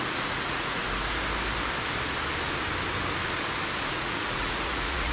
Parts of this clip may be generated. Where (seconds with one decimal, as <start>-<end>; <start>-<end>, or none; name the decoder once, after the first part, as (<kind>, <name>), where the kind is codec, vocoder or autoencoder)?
0.0-0.8 (vocoder, Vocos); 3.9-5.1